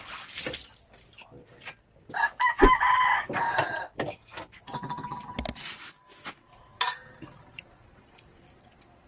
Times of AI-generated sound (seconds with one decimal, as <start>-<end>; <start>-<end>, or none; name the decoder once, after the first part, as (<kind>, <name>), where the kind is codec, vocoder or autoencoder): 4.3-7.6 (vocoder, BigVGAN v2)